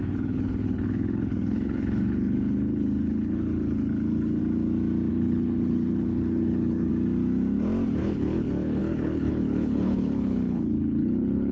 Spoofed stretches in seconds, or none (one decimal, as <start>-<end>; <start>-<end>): 0.0-4.4; 5.1-6.9; 8.0-11.5